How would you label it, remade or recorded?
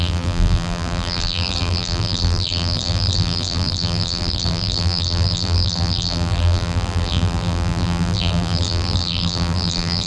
remade